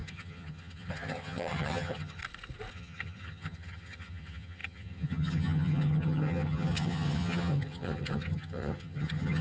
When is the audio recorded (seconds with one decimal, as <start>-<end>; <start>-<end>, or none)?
2.2-2.7